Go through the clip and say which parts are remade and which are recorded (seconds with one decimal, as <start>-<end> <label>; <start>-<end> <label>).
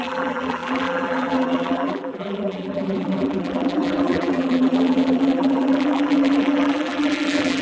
0.0-7.6 remade